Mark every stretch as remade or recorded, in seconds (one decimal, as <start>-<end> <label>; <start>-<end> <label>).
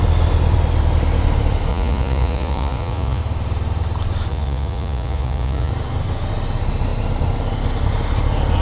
0.0-1.7 recorded; 1.7-3.2 remade; 3.2-4.3 recorded; 4.3-5.7 remade; 5.7-8.6 recorded